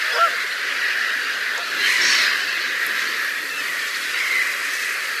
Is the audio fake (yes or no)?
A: no